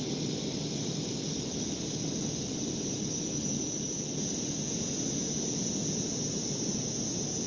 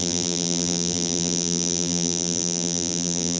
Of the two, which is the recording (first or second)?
first